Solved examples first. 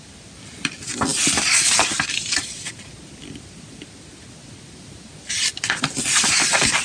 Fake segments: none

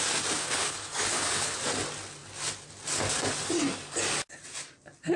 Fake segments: 0.4-1.6 (codec, HILCodec)